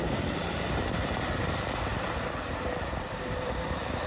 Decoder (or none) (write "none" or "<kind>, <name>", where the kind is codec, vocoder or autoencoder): vocoder, BigVGAN v2